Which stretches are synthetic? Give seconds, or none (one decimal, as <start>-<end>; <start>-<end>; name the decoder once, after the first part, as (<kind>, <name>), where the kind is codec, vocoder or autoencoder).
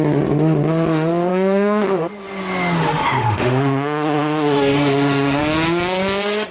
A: 1.3-2.1 (autoencoder, DAC-VAE); 2.9-5.4